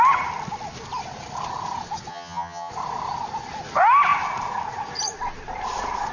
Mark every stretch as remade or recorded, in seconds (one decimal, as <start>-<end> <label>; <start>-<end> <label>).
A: 0.0-2.1 recorded; 2.1-2.7 remade; 2.7-6.1 recorded

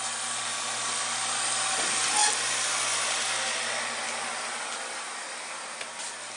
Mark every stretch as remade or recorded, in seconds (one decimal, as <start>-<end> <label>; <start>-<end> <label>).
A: 0.0-6.4 recorded

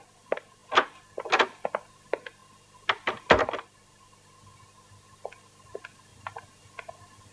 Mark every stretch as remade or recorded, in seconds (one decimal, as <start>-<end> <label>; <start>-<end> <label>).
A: 0.0-6.1 recorded; 6.1-6.6 remade; 6.6-7.3 recorded

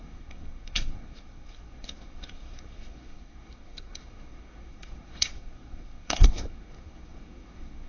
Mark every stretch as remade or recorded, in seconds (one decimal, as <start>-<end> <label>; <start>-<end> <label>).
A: 0.0-7.9 remade